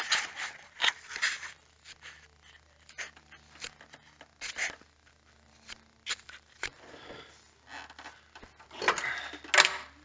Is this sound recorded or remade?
recorded